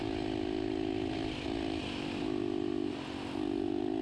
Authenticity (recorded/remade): recorded